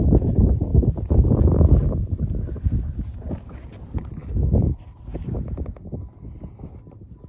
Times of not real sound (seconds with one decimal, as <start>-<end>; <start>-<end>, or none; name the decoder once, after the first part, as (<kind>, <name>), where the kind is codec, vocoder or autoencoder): 0.7-1.7 (vocoder, BigVGAN v2)